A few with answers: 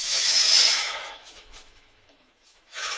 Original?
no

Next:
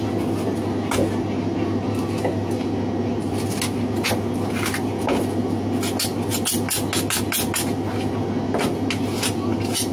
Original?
yes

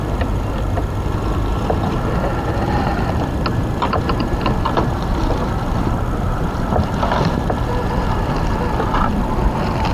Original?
yes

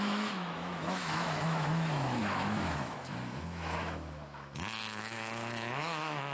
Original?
no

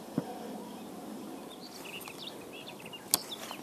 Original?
yes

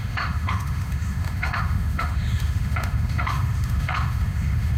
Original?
no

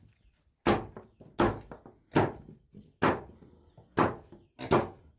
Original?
yes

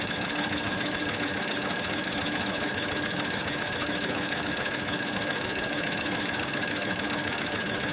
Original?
no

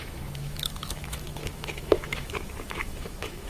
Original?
no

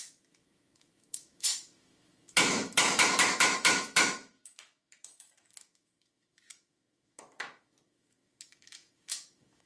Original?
no